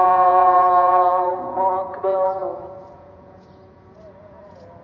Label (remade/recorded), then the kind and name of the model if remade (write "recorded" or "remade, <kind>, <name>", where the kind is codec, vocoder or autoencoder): remade, vocoder, Vocos